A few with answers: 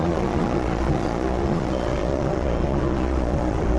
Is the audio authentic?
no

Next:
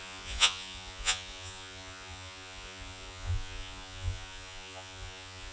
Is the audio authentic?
no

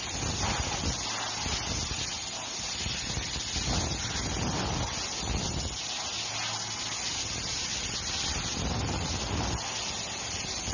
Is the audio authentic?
yes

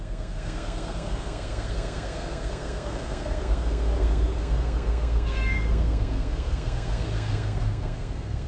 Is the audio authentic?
no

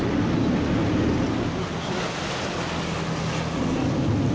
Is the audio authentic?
yes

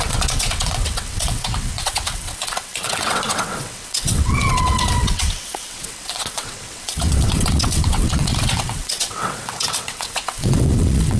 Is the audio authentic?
no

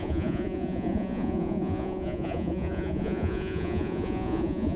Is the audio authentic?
no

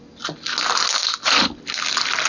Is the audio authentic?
yes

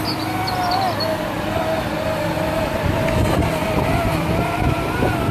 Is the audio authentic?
yes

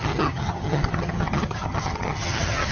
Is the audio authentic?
no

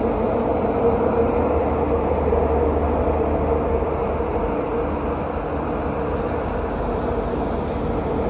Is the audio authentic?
yes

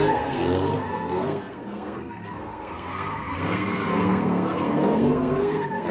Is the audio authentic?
no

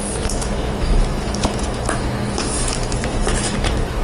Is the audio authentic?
no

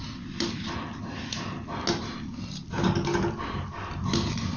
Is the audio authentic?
yes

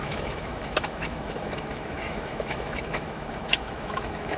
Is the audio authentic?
no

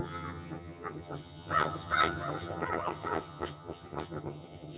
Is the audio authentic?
no